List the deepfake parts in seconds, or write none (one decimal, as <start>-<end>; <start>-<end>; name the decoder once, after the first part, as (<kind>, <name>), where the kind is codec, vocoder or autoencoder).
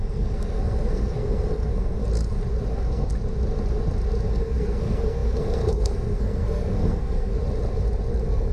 0.0-2.0 (codec, SNAC); 2.7-3.1; 4.3-7.3; 8.1-8.5